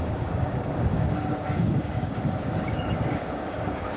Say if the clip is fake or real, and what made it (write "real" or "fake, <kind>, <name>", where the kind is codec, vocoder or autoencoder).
fake, codec, DAC